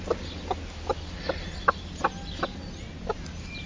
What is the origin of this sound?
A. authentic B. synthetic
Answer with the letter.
A